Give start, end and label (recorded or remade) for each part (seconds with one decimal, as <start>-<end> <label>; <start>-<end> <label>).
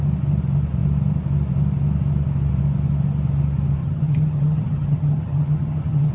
0.0-3.8 recorded; 3.8-6.1 remade